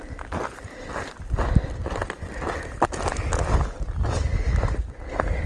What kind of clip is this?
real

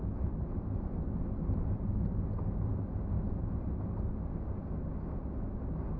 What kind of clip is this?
real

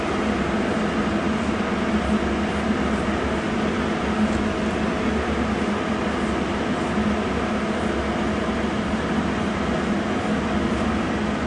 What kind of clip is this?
real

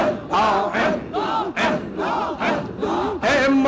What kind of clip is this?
real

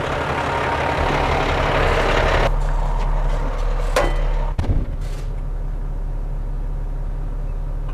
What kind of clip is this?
real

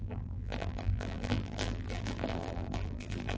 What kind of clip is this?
fake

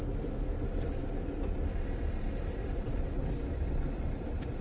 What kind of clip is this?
real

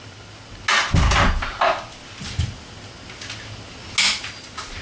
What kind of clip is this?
real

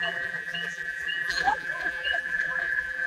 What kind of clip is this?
fake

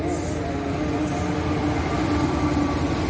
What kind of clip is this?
real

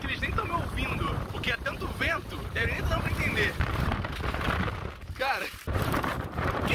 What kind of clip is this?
fake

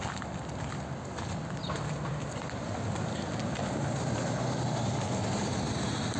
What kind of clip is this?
real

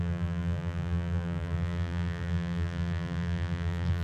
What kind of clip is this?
fake